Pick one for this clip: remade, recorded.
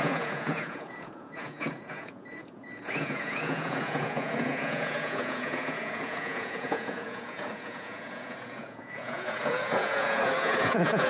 remade